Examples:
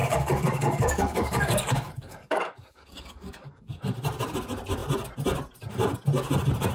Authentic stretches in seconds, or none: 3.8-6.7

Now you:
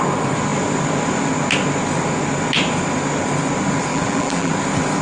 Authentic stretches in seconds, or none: 0.0-3.9; 4.5-5.0

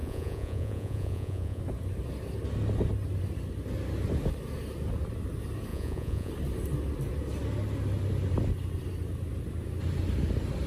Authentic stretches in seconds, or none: 1.6-5.7; 6.3-10.7

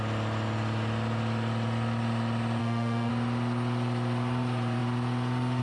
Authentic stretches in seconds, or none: 0.0-2.6; 3.1-5.6